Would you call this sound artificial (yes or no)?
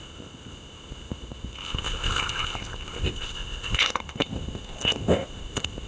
yes